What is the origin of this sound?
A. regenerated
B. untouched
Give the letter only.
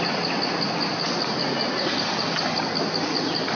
B